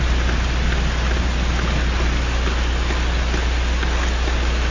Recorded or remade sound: recorded